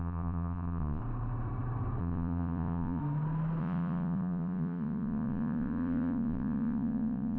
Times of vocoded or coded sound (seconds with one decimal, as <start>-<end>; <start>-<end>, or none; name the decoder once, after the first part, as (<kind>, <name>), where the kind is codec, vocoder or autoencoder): 0.0-1.0 (vocoder, Vocos); 2.0-3.0; 3.6-7.4